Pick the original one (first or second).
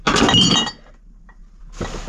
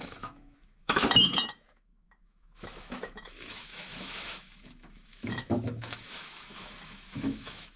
first